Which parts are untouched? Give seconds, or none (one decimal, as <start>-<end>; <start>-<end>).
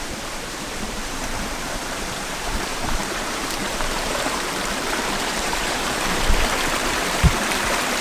none